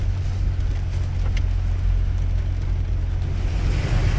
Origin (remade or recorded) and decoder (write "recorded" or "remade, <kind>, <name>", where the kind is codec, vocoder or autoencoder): recorded